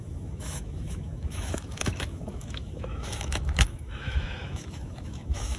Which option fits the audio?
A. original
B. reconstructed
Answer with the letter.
B